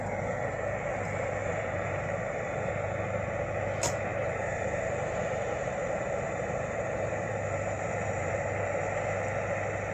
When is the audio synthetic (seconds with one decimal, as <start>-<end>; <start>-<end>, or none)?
1.4-2.7; 4.1-8.3